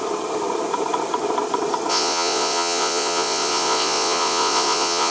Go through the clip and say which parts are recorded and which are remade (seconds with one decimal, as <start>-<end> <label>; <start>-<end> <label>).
0.0-1.9 recorded; 1.9-5.1 remade